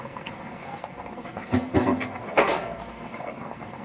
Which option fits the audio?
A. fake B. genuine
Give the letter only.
A